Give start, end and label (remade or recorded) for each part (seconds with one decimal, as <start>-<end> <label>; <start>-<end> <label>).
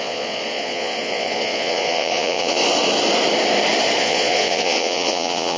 0.0-2.6 remade; 2.6-4.0 recorded; 4.0-5.6 remade